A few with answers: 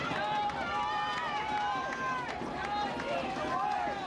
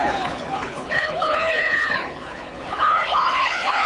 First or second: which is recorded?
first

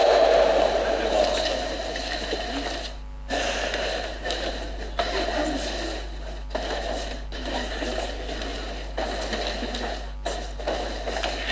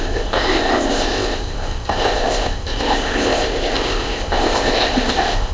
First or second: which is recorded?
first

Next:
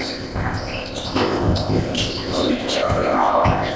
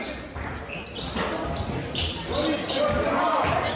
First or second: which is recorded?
second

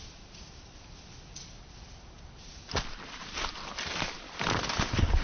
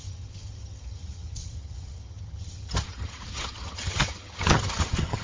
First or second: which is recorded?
first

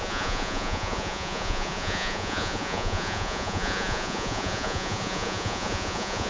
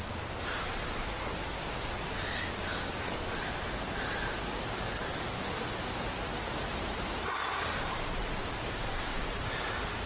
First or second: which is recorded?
second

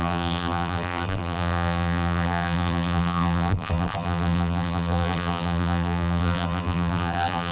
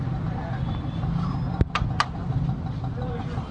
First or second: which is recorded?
second